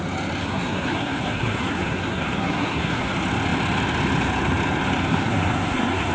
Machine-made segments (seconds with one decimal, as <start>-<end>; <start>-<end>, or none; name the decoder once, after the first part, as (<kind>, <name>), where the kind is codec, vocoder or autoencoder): 0.4-3.1 (codec, SNAC); 5.1-6.1